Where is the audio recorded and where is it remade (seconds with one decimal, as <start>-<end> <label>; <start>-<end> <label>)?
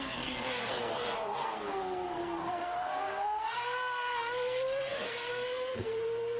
0.0-6.4 remade